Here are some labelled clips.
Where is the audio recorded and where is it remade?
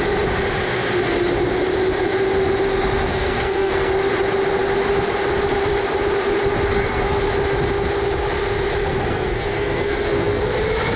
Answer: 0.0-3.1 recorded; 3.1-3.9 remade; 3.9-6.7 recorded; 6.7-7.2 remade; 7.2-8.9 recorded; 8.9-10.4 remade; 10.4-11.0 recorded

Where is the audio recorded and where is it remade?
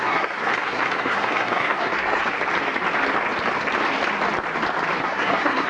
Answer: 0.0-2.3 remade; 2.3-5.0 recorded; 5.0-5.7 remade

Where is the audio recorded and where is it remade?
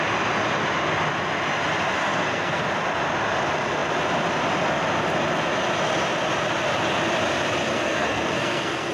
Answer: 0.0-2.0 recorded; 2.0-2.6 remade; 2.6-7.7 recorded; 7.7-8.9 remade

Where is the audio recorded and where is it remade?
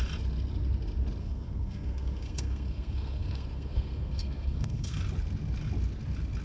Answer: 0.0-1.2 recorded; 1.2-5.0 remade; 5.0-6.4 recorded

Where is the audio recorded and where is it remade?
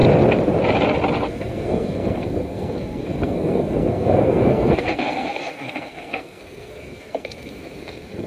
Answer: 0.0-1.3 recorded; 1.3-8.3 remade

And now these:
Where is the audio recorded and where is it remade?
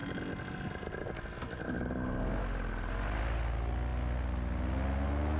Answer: 0.0-5.4 recorded